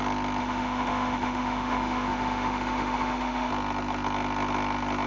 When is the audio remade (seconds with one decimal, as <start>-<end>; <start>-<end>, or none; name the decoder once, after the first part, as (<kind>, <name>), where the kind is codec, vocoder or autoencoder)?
0.4-3.5 (autoencoder, DAC-VAE)